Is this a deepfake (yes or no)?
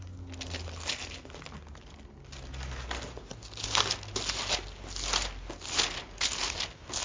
no